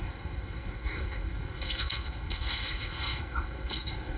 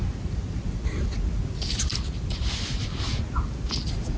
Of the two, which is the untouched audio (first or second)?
second